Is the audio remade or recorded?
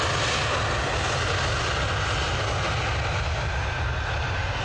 recorded